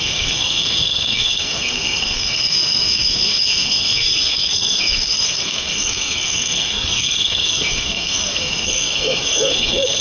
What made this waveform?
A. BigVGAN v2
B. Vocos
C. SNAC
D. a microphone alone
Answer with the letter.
C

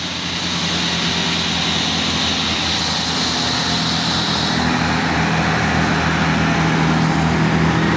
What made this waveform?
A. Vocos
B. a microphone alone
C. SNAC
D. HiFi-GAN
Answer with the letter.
B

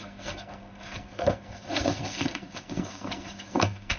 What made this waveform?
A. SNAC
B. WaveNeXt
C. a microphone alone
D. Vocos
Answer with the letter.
A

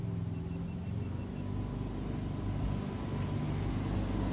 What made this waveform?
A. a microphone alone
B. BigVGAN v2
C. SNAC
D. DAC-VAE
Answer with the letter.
A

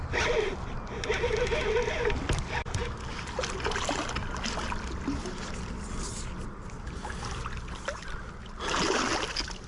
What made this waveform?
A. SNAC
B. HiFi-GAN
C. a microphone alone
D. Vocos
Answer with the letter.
C